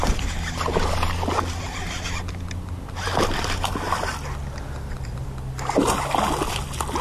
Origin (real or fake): real